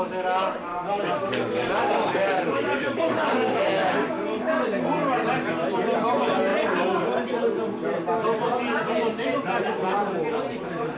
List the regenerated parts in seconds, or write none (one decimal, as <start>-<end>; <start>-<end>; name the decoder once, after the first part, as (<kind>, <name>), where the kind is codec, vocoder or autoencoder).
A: 0.7-4.8 (codec, DAC)

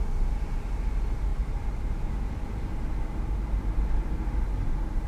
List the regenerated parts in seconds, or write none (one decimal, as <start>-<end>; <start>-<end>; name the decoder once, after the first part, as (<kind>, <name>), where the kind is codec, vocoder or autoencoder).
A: none

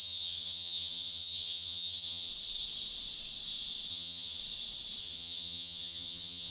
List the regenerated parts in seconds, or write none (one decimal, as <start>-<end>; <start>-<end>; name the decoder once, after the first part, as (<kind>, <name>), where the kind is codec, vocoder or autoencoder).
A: 0.0-2.3 (vocoder, HiFi-GAN); 3.9-4.4; 5.0-6.5

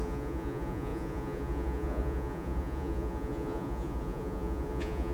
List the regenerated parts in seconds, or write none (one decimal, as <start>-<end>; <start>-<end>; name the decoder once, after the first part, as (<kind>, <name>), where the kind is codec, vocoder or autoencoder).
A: 0.0-5.1 (vocoder, Vocos)

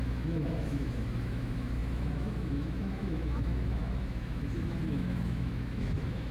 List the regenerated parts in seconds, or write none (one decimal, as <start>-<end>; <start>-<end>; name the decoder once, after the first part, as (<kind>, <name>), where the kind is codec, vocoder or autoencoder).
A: 0.0-6.3 (autoencoder, DAC-VAE)